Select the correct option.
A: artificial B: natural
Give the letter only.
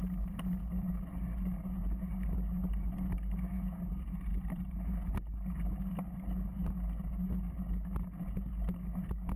B